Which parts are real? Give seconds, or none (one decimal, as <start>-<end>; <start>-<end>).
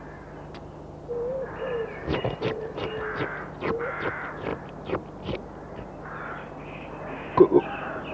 0.0-8.1